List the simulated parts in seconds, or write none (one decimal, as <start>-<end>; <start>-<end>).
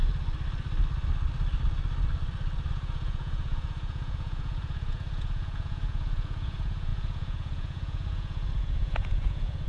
2.7-9.7